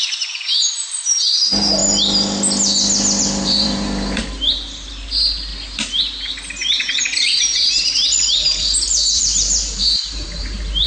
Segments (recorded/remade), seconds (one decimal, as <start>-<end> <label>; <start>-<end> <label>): 0.0-1.8 remade; 1.8-3.2 recorded; 3.2-5.5 remade; 5.5-7.2 recorded; 7.2-10.9 remade